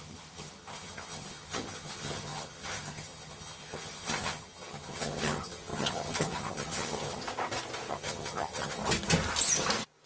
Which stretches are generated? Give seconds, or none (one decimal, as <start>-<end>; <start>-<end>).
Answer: 0.0-7.2; 7.9-8.8